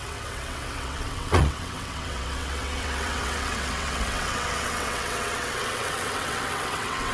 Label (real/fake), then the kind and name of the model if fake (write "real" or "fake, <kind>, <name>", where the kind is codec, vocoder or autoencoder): fake, vocoder, WaveNeXt